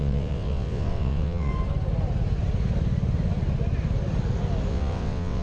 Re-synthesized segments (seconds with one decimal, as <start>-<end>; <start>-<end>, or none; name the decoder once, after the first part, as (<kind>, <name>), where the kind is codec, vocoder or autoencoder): 0.0-1.5 (vocoder, WaveNeXt); 4.7-5.4